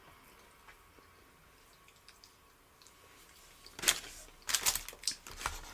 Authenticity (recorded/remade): recorded